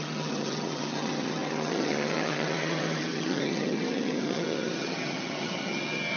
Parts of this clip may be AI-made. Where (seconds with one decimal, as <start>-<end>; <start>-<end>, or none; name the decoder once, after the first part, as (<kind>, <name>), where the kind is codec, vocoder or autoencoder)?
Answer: 0.0-6.2 (vocoder, HiFi-GAN)